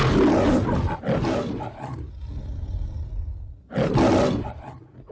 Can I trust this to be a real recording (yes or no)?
yes